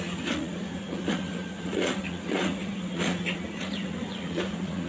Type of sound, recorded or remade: remade